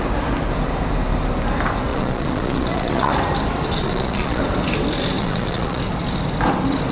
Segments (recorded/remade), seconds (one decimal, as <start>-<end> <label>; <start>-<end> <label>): 0.0-1.9 recorded; 1.9-3.1 remade; 3.1-3.8 recorded; 3.8-4.4 remade; 4.4-5.2 recorded; 5.2-5.8 remade; 5.8-6.9 recorded